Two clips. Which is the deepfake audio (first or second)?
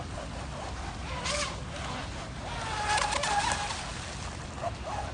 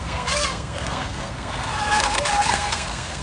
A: second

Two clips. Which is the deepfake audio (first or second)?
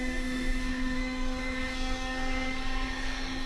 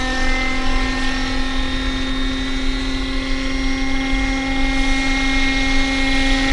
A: first